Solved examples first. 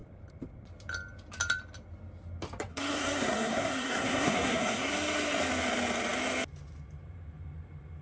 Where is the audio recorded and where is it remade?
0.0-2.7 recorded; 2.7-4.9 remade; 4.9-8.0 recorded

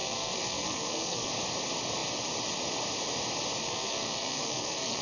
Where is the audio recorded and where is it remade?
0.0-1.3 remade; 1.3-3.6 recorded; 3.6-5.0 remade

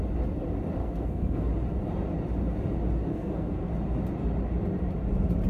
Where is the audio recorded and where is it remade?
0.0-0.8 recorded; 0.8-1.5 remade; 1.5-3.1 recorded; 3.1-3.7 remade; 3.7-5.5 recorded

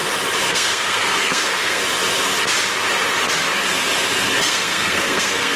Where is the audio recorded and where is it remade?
0.0-0.5 recorded; 0.5-1.8 remade; 1.8-4.4 recorded; 4.4-5.6 remade

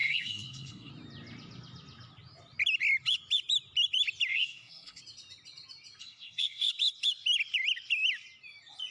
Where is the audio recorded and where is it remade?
0.0-0.9 remade; 0.9-4.3 recorded; 4.3-5.0 remade; 5.0-6.0 recorded; 6.0-6.7 remade; 6.7-8.9 recorded